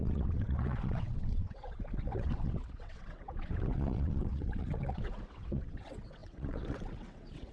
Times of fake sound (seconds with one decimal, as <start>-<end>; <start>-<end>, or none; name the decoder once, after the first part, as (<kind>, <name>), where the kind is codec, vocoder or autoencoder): 0.0-7.5 (vocoder, WaveNeXt)